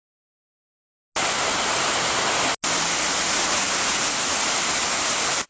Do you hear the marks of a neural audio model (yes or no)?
no